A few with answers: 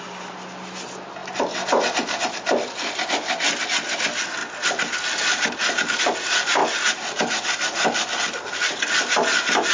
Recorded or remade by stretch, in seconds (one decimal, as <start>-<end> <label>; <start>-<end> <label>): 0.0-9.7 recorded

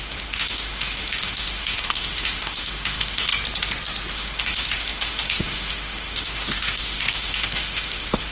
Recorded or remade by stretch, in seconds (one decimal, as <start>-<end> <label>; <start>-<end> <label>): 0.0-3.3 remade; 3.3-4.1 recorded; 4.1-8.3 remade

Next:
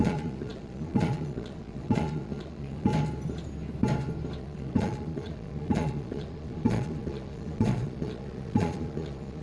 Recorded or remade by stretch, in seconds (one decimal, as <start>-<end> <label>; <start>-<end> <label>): 0.0-2.9 remade; 2.9-4.4 recorded; 4.4-9.4 remade

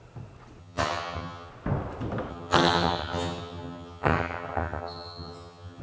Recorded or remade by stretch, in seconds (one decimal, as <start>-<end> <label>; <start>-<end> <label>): 0.0-0.6 recorded; 0.6-1.5 remade; 1.5-2.3 recorded; 2.3-5.8 remade

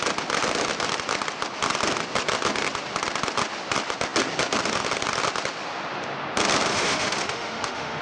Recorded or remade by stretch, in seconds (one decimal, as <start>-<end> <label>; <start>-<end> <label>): 0.0-6.7 recorded; 6.7-8.0 remade